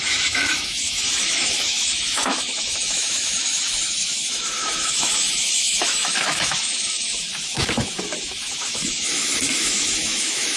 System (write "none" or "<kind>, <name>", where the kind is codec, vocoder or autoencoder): autoencoder, DAC-VAE